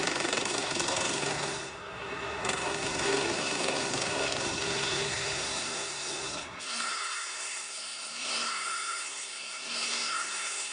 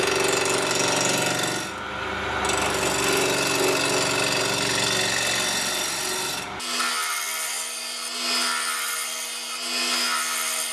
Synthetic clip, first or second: first